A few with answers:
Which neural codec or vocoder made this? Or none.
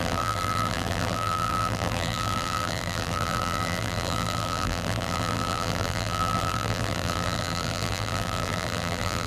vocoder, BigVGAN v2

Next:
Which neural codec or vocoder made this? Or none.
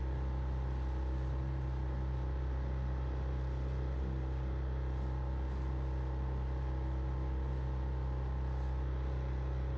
none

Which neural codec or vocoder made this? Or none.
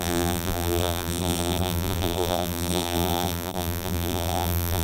vocoder, BigVGAN v2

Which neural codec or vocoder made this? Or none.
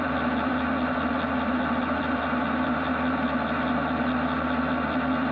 vocoder, BigVGAN v2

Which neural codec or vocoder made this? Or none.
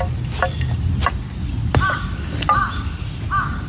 none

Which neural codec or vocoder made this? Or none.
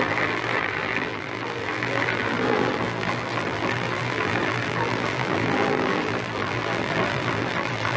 vocoder, BigVGAN v2